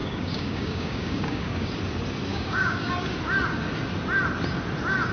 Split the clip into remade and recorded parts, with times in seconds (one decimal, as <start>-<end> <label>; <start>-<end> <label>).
0.0-1.7 remade; 1.7-2.3 recorded; 2.3-2.9 remade; 2.9-5.1 recorded